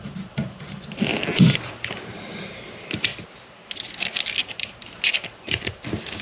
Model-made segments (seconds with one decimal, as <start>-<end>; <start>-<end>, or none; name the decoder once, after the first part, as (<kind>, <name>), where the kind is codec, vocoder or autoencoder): 1.1-2.3 (vocoder, BigVGAN v2)